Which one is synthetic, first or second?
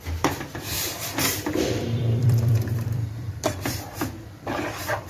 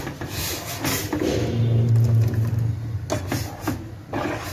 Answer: first